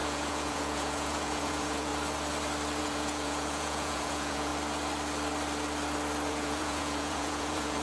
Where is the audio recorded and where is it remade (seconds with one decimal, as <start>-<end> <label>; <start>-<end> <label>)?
0.0-1.9 remade; 1.9-2.8 recorded; 2.8-4.5 remade; 4.5-6.3 recorded; 6.3-7.8 remade